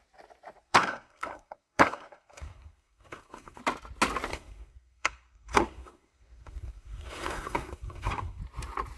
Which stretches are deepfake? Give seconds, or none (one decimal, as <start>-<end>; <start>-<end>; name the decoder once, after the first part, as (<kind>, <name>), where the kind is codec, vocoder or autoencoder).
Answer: 0.6-3.6 (codec, SNAC); 4.3-8.4